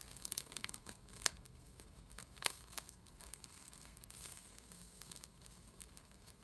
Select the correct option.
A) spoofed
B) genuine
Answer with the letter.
A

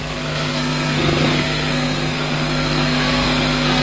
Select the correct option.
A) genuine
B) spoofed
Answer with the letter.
B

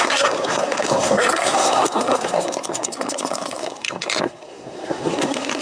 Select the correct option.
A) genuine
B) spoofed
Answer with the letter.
B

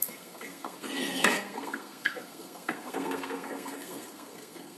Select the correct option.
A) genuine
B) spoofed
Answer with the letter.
B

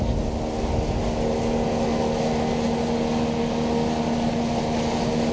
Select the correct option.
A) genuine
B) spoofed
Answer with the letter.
A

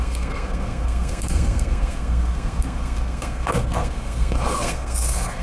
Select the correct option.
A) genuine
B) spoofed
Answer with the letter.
B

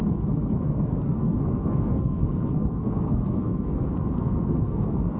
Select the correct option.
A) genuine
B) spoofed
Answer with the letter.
B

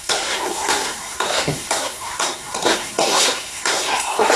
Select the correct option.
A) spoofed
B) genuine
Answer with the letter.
A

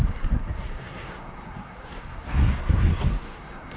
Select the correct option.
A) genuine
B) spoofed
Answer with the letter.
B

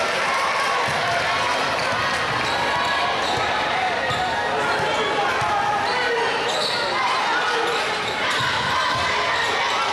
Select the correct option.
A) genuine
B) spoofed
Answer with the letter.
A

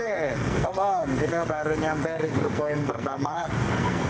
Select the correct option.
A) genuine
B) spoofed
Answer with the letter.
B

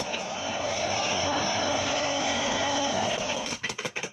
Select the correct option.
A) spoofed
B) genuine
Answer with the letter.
A